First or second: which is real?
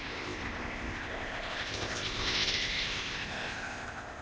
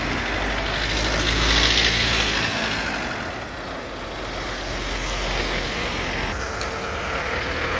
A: second